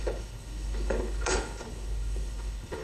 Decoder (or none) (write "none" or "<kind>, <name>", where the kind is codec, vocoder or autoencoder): codec, HILCodec